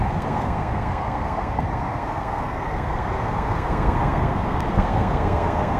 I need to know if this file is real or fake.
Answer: fake